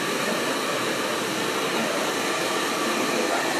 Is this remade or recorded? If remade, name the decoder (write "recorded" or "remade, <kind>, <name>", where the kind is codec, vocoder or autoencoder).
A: recorded